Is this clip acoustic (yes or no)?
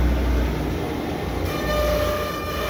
yes